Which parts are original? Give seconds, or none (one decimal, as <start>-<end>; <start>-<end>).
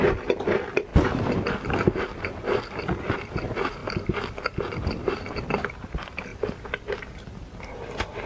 0.0-8.3